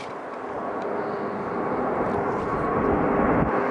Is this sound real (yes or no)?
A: yes